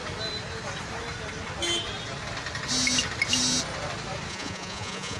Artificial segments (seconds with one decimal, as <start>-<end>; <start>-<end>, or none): 4.3-5.2